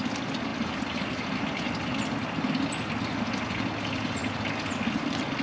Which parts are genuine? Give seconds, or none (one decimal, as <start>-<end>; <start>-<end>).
0.0-5.4